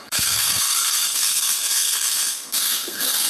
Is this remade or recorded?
remade